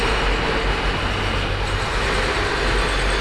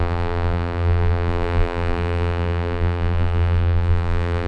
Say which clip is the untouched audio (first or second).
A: first